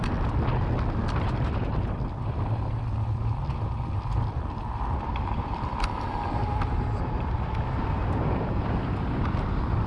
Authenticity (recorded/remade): recorded